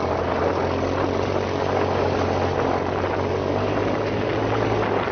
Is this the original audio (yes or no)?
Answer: yes